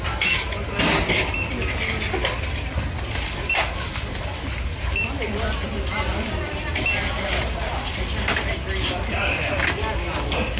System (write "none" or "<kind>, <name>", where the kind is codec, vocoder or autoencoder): none